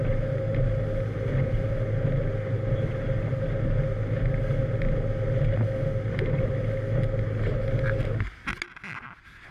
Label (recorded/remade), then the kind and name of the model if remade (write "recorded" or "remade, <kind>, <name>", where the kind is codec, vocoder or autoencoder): recorded